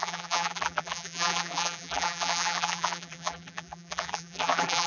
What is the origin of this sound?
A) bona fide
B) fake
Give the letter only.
B